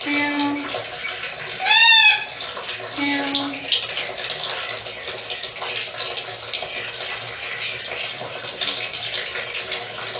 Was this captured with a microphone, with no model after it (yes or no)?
yes